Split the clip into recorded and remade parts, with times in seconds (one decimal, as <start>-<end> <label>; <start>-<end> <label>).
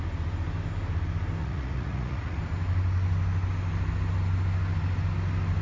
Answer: 0.0-1.4 recorded; 1.4-2.4 remade; 2.4-5.6 recorded